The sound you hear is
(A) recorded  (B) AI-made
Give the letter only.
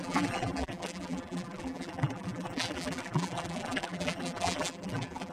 B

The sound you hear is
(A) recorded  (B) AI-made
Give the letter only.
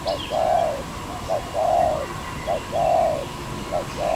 A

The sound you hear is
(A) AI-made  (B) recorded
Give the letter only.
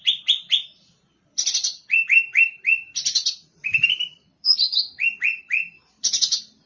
A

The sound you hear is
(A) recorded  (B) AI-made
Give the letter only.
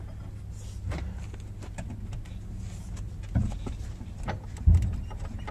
A